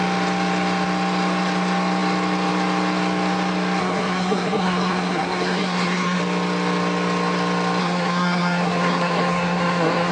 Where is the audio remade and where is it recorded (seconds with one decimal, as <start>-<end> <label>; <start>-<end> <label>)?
0.0-3.8 recorded; 3.8-6.2 remade; 6.2-7.8 recorded; 7.8-10.1 remade